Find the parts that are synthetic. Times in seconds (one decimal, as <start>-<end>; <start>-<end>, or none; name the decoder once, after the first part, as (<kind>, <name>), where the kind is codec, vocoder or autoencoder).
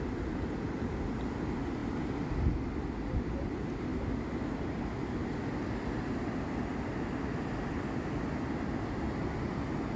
none